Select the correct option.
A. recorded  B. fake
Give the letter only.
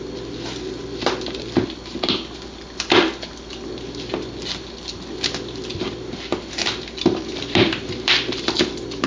A